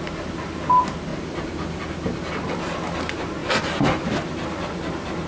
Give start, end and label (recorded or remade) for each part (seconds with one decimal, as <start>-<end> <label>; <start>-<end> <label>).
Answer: 0.0-1.1 recorded; 1.1-1.8 remade; 1.8-3.4 recorded; 3.4-4.7 remade; 4.7-5.3 recorded